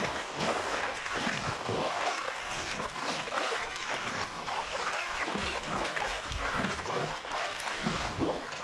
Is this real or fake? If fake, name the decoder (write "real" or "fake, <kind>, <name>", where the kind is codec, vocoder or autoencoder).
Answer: fake, codec, DAC